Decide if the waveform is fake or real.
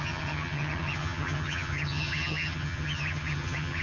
fake